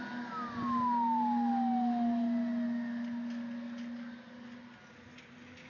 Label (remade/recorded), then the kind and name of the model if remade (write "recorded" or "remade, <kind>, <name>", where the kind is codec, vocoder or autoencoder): recorded